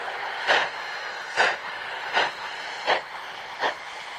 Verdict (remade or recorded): recorded